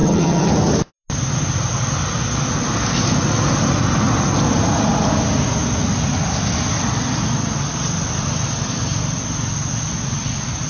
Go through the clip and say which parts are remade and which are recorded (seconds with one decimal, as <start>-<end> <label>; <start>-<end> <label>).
0.0-0.5 remade; 0.5-10.7 recorded